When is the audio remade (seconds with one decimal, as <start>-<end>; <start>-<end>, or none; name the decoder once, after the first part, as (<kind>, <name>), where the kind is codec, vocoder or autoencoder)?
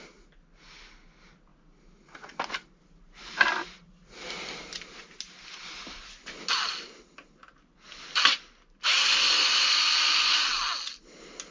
none